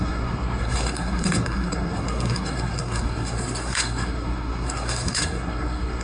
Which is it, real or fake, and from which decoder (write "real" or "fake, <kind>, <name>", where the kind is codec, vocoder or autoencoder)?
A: fake, codec, SNAC